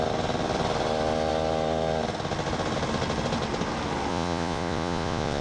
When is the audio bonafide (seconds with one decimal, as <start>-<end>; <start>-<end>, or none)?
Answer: 0.0-4.1

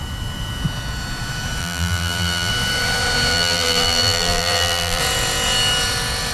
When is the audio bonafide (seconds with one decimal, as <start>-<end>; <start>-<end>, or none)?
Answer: 0.0-1.6; 2.5-3.3; 5.0-6.3

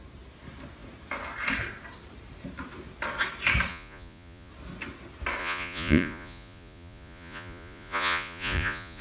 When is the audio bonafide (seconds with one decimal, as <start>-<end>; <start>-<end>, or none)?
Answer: 0.0-3.7; 4.5-5.4

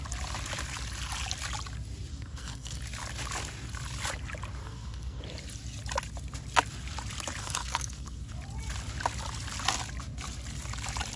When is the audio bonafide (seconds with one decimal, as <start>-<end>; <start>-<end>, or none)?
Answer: 0.0-2.1; 2.8-4.6; 5.2-7.4; 8.3-11.2

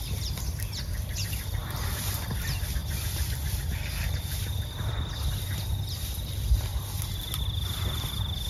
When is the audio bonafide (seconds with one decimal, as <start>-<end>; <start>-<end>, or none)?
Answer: 6.7-7.4